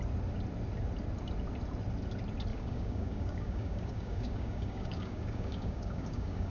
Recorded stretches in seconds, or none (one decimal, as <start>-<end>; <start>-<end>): 0.0-2.5